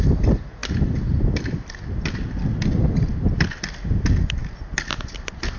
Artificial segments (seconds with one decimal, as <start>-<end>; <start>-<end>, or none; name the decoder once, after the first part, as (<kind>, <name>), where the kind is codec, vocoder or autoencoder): none